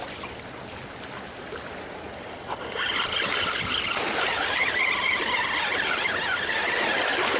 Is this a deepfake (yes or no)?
yes